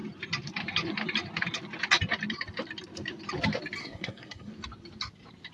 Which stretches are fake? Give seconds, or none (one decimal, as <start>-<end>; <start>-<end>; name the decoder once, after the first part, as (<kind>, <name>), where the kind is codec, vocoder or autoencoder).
3.8-4.5 (codec, SNAC)